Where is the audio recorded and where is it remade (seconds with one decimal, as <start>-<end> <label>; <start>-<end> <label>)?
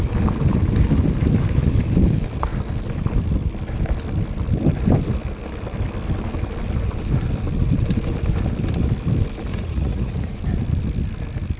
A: 0.0-9.5 recorded; 9.5-10.4 remade; 10.4-11.6 recorded